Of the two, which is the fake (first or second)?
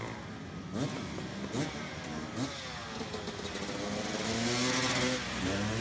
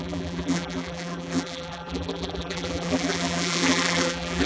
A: second